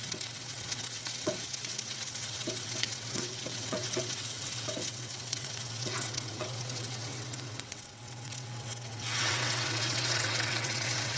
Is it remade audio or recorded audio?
remade